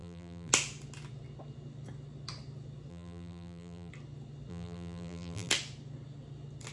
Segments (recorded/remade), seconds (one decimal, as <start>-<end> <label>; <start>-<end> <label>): 0.0-0.5 remade; 0.5-2.9 recorded; 2.9-3.9 remade; 3.9-4.5 recorded; 4.5-5.5 remade; 5.5-6.7 recorded